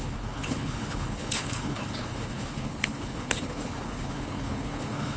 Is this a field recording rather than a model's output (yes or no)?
no